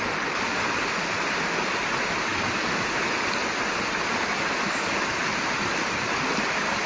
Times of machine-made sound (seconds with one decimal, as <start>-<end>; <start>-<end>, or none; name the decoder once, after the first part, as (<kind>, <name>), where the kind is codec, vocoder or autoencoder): none